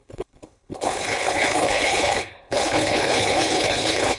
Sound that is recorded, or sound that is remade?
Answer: remade